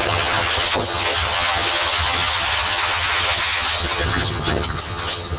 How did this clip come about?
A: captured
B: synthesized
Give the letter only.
B